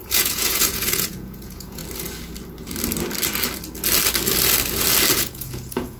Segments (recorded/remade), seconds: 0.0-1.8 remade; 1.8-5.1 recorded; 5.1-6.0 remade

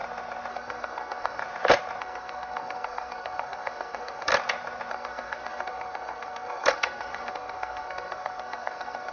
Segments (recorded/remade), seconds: 0.0-0.5 recorded; 0.5-1.4 remade; 1.4-2.0 recorded; 2.0-4.3 remade; 4.3-4.9 recorded; 4.9-9.1 remade